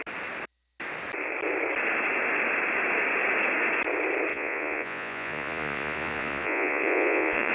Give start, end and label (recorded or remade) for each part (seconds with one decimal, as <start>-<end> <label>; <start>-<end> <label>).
0.0-4.3 recorded; 4.3-7.5 remade